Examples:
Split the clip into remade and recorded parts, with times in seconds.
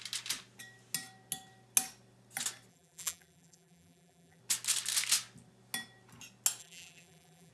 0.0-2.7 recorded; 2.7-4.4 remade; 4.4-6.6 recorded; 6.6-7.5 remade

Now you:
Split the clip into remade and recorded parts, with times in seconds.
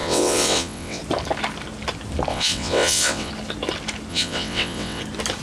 0.0-1.0 remade; 1.0-2.3 recorded; 2.3-3.3 remade; 3.3-4.1 recorded; 4.1-5.0 remade; 5.0-5.4 recorded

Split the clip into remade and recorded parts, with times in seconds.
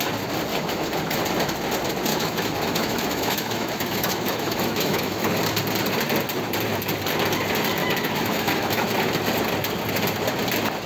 0.0-0.5 recorded; 0.5-1.0 remade; 1.0-2.1 recorded; 2.1-5.4 remade; 5.4-7.8 recorded; 7.8-8.9 remade; 8.9-10.9 recorded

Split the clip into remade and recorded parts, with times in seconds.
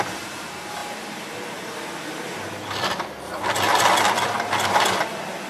0.0-5.5 recorded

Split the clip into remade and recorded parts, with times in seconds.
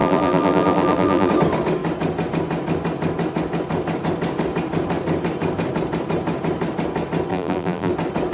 0.0-1.3 remade; 1.3-7.3 recorded; 7.3-7.9 remade; 7.9-8.3 recorded